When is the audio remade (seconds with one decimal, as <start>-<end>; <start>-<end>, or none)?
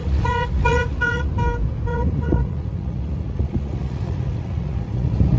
0.0-1.3; 1.9-5.4